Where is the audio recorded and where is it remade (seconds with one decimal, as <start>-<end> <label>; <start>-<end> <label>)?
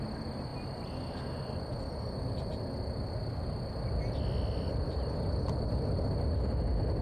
0.0-7.0 recorded